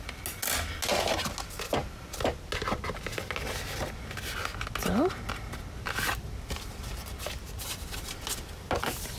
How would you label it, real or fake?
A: real